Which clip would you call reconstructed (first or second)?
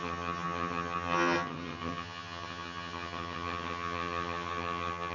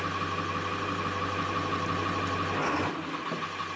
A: first